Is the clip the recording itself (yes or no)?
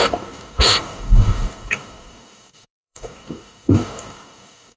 no